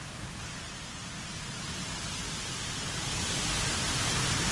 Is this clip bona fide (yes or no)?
yes